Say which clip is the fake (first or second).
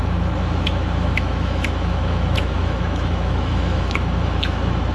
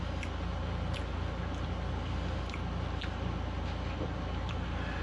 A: first